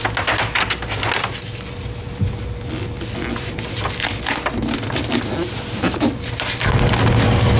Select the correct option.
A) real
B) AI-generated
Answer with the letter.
A